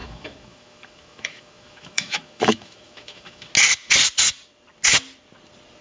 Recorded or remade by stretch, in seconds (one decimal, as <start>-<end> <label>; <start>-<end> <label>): 0.0-3.5 remade; 3.5-5.8 recorded